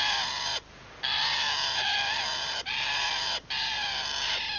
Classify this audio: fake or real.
real